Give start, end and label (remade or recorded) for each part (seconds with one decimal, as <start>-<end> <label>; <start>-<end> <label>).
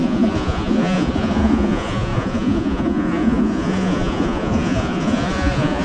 0.0-5.8 remade